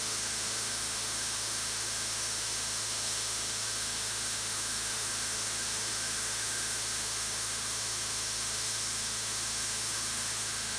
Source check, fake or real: fake